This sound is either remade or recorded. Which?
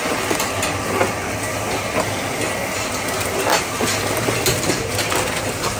recorded